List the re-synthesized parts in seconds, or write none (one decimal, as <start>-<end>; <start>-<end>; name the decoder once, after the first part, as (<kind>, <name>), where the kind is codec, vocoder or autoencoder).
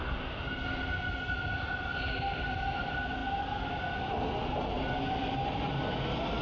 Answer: none